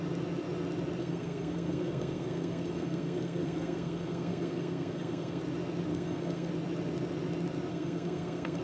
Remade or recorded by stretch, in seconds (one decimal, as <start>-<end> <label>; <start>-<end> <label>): 0.0-1.0 recorded; 1.0-5.4 remade; 5.4-5.9 recorded; 5.9-6.5 remade; 6.5-7.7 recorded; 7.7-8.6 remade